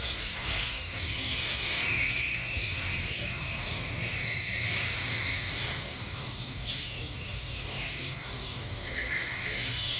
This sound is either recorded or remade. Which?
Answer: remade